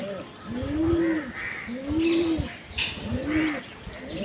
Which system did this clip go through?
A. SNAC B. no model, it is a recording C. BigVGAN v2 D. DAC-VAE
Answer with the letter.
B